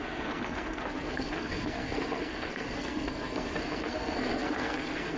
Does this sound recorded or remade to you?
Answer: remade